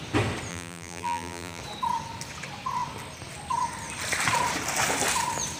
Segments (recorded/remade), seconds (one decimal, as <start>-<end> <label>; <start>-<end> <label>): 0.0-0.5 recorded; 0.5-1.6 remade; 1.6-5.6 recorded